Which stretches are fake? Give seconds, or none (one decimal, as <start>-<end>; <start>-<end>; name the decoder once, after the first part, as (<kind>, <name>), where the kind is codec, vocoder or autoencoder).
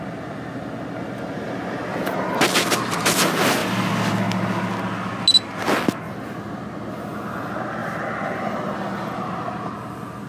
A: none